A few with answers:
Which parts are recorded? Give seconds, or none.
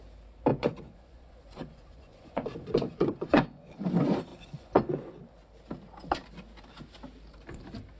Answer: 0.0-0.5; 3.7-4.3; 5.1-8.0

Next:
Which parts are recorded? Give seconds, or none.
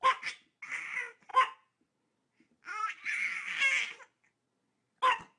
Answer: 0.0-5.4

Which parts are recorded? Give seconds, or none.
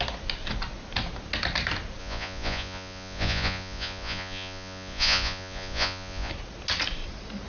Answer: 0.0-2.0; 6.3-7.5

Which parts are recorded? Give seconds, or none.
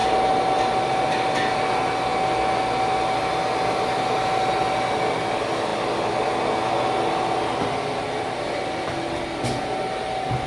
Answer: 0.0-10.5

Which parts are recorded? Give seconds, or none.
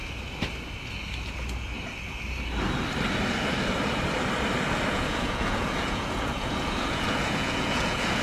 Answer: 0.0-4.9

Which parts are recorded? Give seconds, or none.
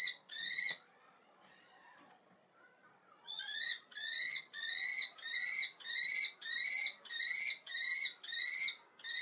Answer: 4.9-9.2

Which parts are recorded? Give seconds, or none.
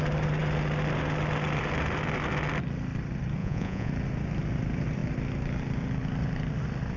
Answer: 0.0-3.4; 3.9-7.0